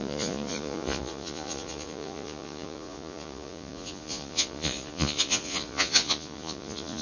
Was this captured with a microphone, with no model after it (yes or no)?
no